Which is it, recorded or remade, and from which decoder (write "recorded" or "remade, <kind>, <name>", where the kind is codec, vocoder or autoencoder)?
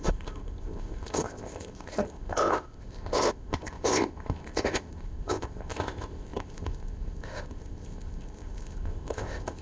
remade, codec, ZipCodec